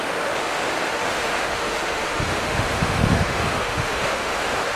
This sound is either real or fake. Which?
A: fake